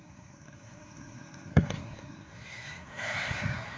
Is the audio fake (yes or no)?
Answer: yes